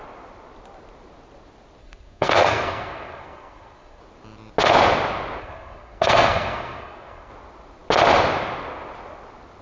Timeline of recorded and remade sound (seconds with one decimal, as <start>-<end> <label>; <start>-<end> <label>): 0.0-1.8 recorded; 1.8-4.0 remade; 4.0-5.4 recorded; 5.4-7.3 remade; 7.3-9.6 recorded